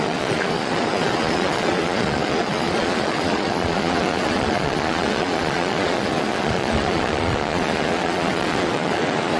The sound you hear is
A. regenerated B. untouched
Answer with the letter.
A